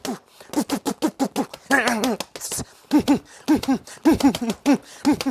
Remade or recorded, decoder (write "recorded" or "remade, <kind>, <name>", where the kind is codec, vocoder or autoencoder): recorded